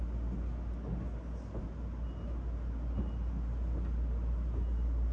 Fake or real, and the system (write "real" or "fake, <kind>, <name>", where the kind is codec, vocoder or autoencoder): real